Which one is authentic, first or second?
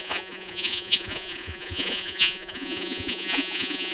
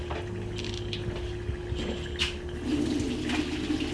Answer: second